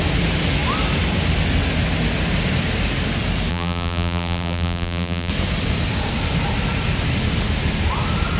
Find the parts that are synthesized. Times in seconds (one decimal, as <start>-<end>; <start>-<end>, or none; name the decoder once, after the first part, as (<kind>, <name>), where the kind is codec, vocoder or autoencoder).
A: 3.5-5.3 (vocoder, BigVGAN v2)